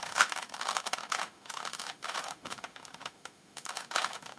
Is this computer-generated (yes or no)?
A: yes